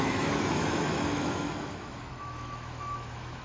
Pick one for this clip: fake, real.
fake